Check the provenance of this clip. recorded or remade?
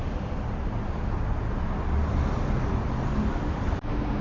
recorded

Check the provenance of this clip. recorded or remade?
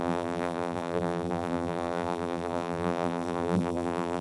remade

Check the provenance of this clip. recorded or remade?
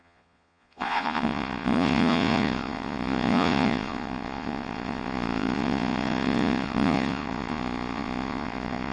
remade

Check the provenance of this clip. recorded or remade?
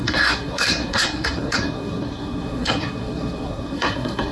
remade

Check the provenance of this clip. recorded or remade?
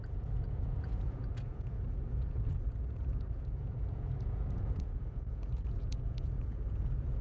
remade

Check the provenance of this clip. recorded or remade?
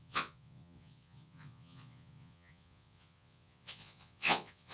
remade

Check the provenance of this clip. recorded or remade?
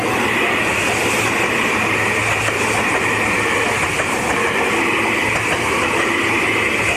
recorded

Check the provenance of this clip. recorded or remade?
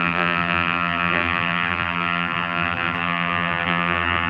remade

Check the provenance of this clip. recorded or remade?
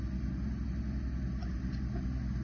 recorded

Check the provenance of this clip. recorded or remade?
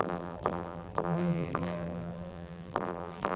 remade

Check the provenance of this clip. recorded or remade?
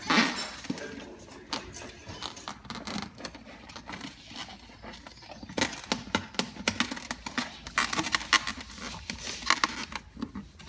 recorded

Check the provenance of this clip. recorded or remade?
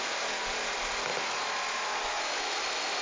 recorded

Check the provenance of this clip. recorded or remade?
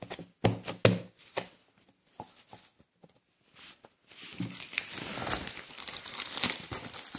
recorded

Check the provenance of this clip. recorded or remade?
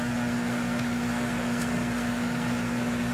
remade